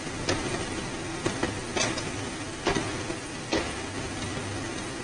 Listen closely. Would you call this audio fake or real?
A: real